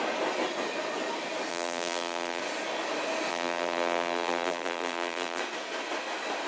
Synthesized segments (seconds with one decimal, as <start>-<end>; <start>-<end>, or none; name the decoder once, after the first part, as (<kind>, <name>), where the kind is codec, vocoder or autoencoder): 1.5-2.4 (vocoder, BigVGAN v2); 3.3-5.4